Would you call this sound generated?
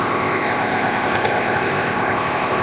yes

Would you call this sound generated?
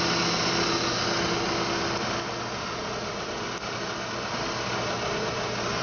no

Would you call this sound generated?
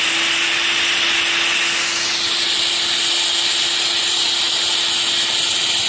no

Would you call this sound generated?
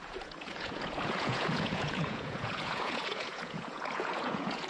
yes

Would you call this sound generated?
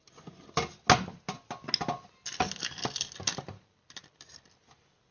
no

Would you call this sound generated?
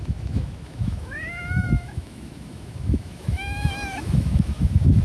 yes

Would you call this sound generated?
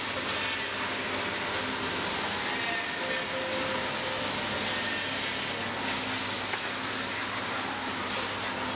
no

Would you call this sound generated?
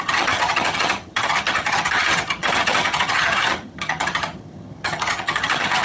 yes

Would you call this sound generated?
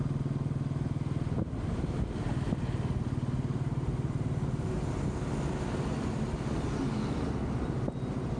no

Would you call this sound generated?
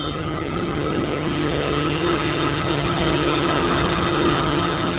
yes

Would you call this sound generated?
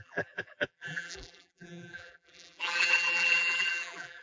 yes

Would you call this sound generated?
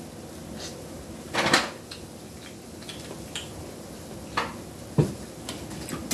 no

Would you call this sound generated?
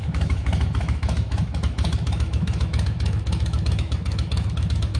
yes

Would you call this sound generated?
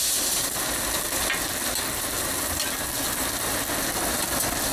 no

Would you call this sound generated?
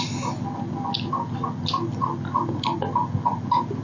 no